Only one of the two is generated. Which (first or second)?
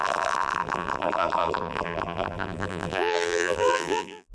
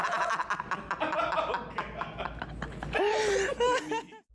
first